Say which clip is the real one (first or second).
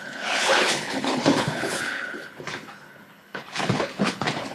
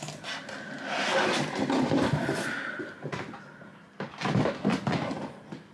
second